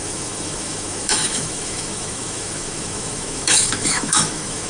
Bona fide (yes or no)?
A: no